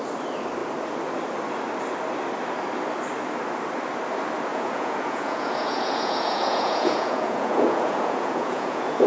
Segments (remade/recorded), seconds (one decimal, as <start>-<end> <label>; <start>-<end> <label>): 0.0-4.5 recorded; 4.5-9.1 remade